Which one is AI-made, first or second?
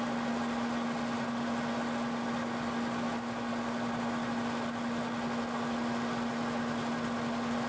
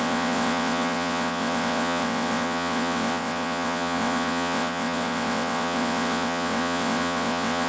second